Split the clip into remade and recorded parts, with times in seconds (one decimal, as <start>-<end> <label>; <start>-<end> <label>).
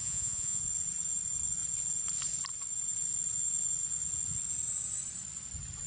0.0-0.6 remade; 0.6-5.9 recorded